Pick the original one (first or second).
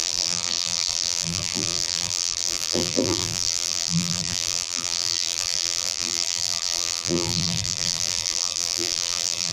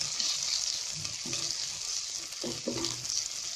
second